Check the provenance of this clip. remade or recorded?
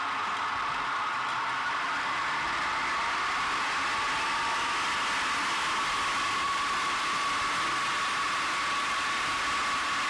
recorded